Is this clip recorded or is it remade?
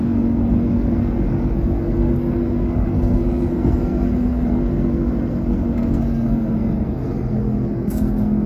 remade